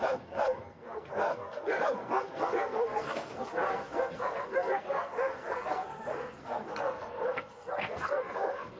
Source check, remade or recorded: remade